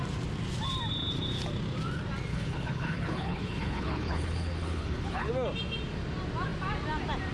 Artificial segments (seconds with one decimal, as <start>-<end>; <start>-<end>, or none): 2.3-5.3